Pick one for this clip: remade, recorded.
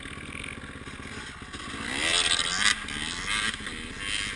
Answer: recorded